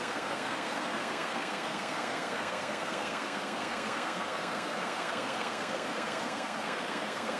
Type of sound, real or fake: fake